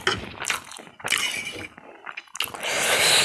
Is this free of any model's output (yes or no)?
yes